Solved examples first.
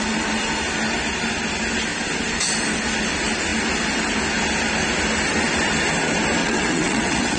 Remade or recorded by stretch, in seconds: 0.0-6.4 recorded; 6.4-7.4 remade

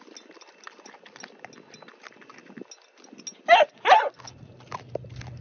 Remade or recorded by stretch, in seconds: 0.0-5.4 recorded

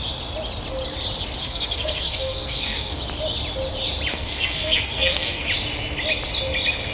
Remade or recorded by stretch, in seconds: 0.0-1.4 recorded; 1.4-3.0 remade; 3.0-4.1 recorded; 4.1-5.5 remade; 5.5-6.9 recorded

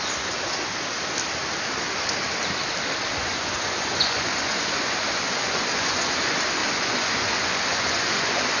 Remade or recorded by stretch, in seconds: 0.0-0.7 remade; 0.7-3.2 recorded; 3.2-8.6 remade

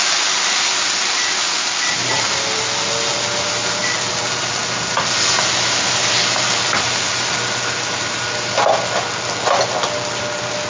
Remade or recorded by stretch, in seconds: 0.0-10.7 recorded

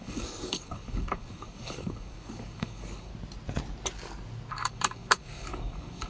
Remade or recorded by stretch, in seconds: 0.0-3.1 remade; 3.1-4.5 recorded; 4.5-6.1 remade

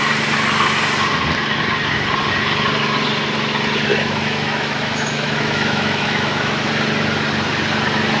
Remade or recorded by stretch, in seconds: 0.0-3.9 recorded; 3.9-6.7 remade; 6.7-8.2 recorded

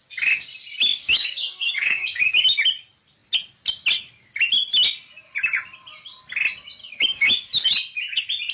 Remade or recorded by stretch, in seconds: 0.0-0.9 recorded; 0.9-2.5 remade; 2.5-6.8 recorded; 6.8-7.5 remade; 7.5-8.5 recorded